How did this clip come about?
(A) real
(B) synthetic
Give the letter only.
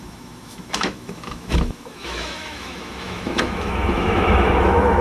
B